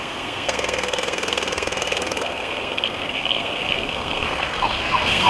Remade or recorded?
remade